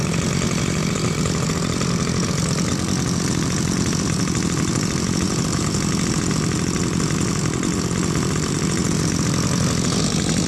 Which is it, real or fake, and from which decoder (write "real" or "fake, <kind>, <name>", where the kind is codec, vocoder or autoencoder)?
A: real